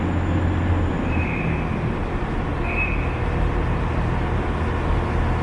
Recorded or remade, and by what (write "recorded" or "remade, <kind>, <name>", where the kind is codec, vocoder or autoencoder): recorded